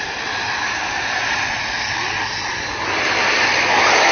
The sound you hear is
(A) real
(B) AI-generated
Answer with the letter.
A